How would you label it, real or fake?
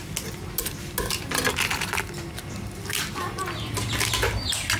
real